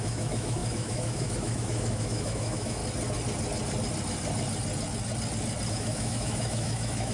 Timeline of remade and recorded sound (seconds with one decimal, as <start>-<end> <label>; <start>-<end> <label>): 0.0-2.8 remade; 2.8-5.7 recorded; 5.7-7.1 remade